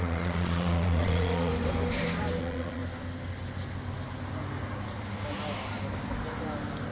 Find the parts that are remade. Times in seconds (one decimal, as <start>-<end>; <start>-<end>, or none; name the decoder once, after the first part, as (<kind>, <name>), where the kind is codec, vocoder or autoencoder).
0.0-1.5 (vocoder, Vocos); 2.4-2.8